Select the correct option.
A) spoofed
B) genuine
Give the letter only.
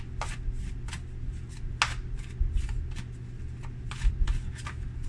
B